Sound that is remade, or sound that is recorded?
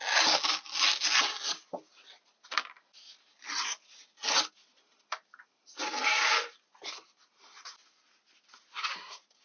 recorded